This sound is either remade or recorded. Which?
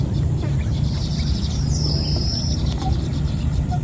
remade